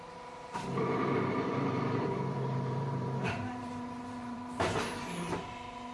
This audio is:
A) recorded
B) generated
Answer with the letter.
B